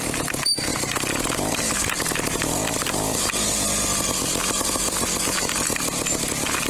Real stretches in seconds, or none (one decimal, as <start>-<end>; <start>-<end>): 0.0-6.7